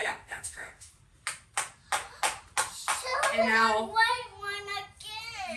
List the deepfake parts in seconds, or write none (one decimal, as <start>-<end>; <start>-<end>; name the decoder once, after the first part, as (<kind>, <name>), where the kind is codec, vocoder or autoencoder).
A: 0.0-0.9 (autoencoder, DAC-VAE)